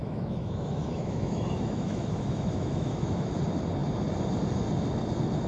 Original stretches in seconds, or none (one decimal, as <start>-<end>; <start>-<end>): 3.3-5.5